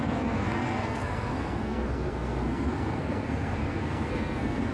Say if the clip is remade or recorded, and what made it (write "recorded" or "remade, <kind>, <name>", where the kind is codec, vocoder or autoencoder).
remade, codec, SNAC